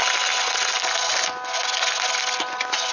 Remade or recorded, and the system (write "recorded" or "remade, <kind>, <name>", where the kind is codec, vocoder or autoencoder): recorded